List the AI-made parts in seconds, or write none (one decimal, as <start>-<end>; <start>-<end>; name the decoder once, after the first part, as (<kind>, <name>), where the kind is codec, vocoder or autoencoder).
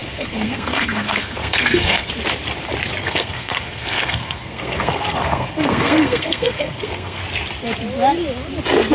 0.0-2.1 (codec, SNAC); 3.0-7.2